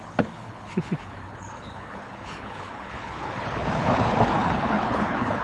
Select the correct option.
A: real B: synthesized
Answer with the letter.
B